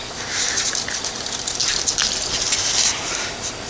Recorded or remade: recorded